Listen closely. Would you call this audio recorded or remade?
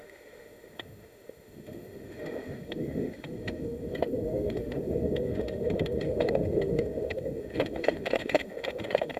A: remade